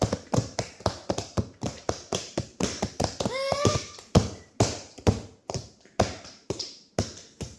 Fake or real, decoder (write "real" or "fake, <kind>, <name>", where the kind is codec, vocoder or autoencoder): fake, vocoder, BigVGAN v2